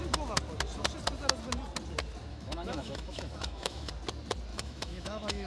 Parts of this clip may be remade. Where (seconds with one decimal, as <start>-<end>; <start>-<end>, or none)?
2.3-3.9; 4.5-5.5